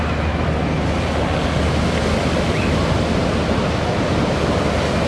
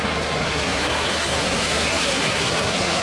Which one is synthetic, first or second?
second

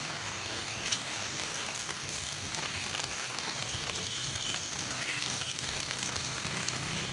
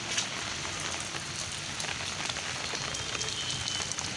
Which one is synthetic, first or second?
first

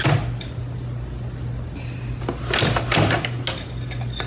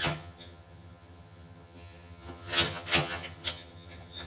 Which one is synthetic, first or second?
second